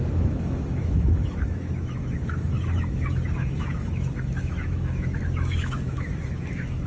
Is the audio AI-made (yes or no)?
yes